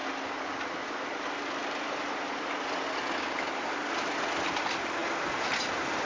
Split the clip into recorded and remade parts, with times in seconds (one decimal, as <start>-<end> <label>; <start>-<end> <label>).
0.0-6.1 recorded